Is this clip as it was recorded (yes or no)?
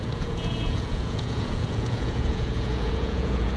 no